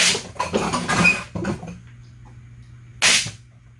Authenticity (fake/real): real